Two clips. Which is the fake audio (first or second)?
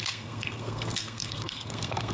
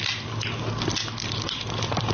first